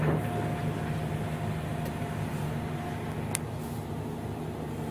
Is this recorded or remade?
recorded